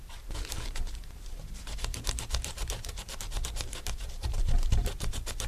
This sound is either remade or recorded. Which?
remade